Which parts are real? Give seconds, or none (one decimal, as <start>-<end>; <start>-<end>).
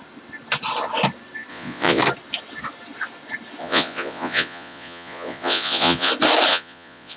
0.0-1.5; 2.0-3.6; 6.1-6.5